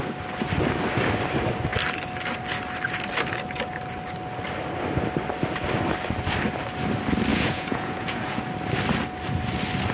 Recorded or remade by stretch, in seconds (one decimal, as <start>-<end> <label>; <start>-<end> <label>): 0.0-7.3 recorded; 7.3-8.4 remade; 8.4-9.9 recorded